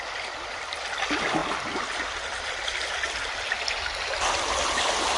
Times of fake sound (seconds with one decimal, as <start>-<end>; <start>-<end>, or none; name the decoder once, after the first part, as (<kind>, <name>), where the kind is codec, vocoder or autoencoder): none